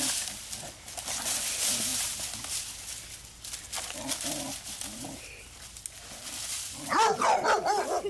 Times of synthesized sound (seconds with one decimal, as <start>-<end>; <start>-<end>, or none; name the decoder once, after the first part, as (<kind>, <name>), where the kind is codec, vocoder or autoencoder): none